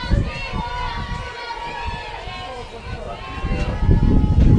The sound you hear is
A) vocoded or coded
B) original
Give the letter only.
B